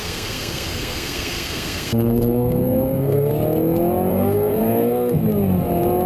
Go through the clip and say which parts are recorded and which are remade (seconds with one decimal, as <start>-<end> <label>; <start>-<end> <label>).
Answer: 0.0-3.3 remade; 3.3-4.1 recorded; 4.1-5.2 remade; 5.2-6.1 recorded